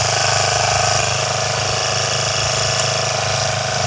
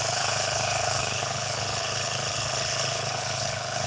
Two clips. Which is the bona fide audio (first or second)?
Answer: first